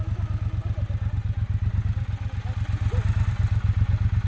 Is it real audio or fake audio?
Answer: real